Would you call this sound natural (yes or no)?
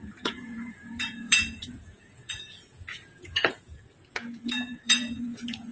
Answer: no